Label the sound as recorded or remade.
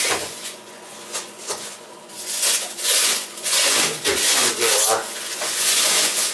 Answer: remade